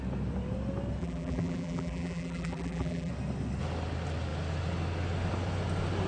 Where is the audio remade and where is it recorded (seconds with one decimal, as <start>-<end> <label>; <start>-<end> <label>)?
0.0-1.0 recorded; 1.0-3.1 remade; 3.1-6.1 recorded